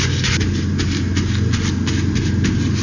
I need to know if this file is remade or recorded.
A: recorded